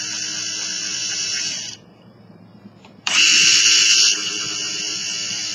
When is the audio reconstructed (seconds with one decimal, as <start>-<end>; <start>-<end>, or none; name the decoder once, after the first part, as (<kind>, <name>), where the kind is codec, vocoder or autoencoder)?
1.0-3.6 (vocoder, BigVGAN v2)